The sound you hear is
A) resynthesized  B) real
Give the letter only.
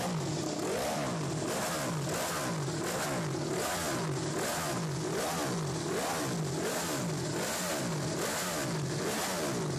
B